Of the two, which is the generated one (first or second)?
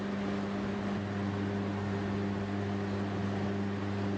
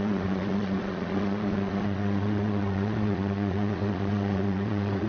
second